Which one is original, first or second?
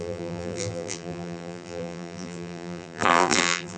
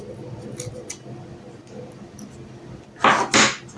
second